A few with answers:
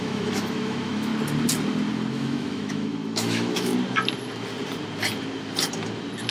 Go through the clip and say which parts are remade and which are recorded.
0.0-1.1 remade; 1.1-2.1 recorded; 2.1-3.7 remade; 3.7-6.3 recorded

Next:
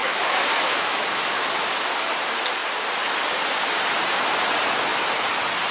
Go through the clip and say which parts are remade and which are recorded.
0.0-1.5 remade; 1.5-5.7 recorded

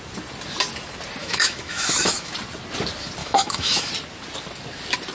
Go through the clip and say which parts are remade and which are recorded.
0.0-1.2 recorded; 1.2-2.3 remade; 2.3-3.2 recorded; 3.2-3.9 remade; 3.9-5.1 recorded

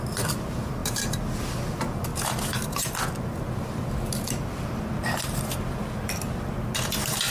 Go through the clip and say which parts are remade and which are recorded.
0.0-7.3 recorded

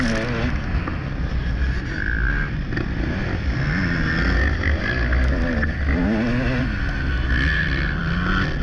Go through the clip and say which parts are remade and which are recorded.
0.0-8.6 recorded

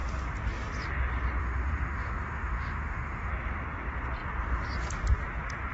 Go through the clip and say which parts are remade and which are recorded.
0.0-1.4 recorded; 1.4-3.3 remade; 3.3-5.7 recorded

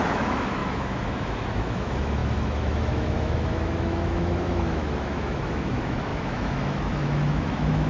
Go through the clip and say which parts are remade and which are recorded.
0.0-7.9 remade

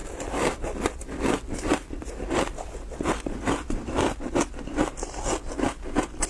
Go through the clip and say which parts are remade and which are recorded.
0.0-6.3 recorded